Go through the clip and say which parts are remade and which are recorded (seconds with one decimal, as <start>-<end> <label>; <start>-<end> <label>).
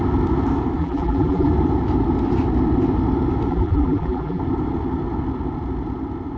0.0-0.8 recorded; 0.8-1.5 remade; 1.5-3.5 recorded; 3.5-4.4 remade; 4.4-6.4 recorded